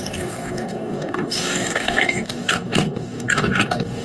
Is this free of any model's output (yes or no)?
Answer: no